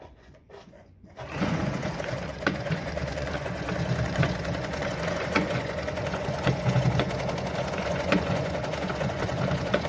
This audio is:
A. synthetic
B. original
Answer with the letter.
A